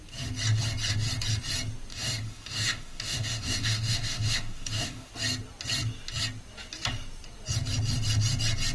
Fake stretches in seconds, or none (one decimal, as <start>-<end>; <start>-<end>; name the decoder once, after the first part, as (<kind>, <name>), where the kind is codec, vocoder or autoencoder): 1.9-5.1 (autoencoder, DAC-VAE)